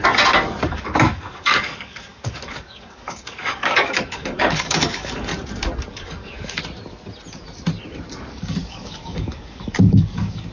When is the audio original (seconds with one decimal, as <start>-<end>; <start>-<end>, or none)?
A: 0.0-0.7; 5.3-5.9; 6.6-8.3